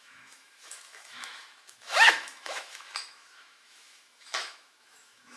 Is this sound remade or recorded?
remade